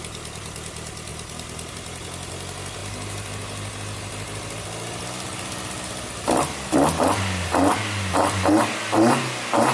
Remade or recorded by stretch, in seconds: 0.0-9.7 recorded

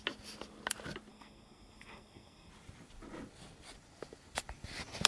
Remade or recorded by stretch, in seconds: 0.0-1.1 recorded; 1.1-2.5 remade; 2.5-5.1 recorded

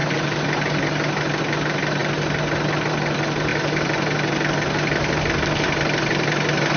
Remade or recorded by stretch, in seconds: 0.0-6.8 recorded

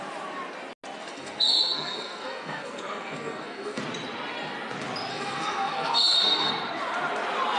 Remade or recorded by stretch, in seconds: 0.0-1.0 recorded; 1.0-3.8 remade; 3.8-5.1 recorded; 5.1-6.5 remade; 6.5-7.6 recorded

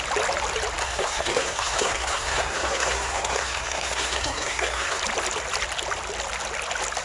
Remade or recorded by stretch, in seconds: 0.0-0.8 recorded; 0.8-5.0 remade; 5.0-7.0 recorded